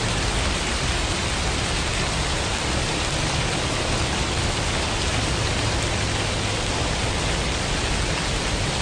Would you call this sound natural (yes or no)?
yes